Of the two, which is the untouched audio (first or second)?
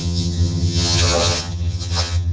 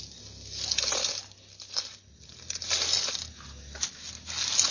second